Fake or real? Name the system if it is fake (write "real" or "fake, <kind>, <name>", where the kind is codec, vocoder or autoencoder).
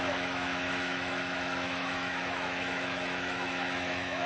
fake, autoencoder, DAC-VAE